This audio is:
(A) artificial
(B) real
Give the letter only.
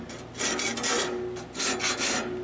B